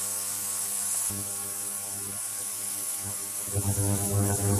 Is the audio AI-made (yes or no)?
yes